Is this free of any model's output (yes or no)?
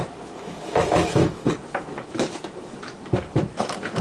no